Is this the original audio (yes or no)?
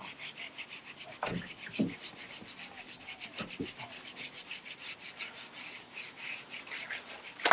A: yes